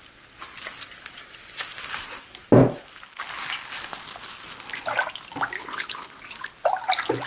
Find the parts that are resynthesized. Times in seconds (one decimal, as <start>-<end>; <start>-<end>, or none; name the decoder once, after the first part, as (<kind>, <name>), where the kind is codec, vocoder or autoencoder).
5.6-6.2 (codec, HILCodec)